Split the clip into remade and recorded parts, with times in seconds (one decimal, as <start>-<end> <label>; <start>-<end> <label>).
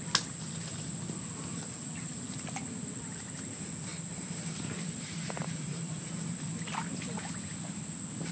0.0-1.5 recorded; 1.5-2.1 remade; 2.1-3.9 recorded; 3.9-6.7 remade; 6.7-8.3 recorded